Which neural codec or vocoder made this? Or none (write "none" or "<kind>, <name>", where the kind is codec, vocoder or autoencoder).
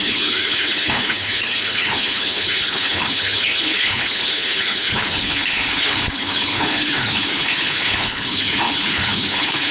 codec, HILCodec